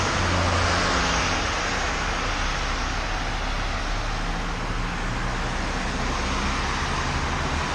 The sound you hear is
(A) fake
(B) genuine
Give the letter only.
B